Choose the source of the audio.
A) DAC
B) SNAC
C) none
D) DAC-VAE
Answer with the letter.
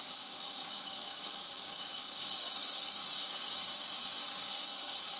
A